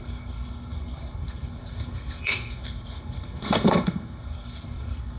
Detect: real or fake fake